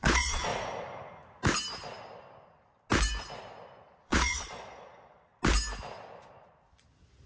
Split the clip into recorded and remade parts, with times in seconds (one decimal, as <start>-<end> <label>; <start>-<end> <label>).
0.0-0.5 remade; 0.5-3.8 recorded; 3.8-5.3 remade; 5.3-6.7 recorded; 6.7-7.3 remade